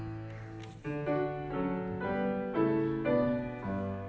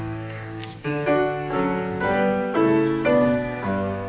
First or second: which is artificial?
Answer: second